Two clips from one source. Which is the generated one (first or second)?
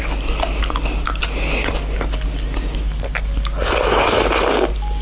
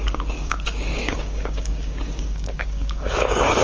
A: second